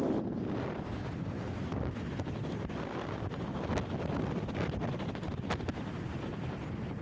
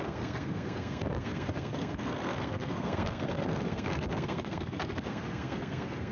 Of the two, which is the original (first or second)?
first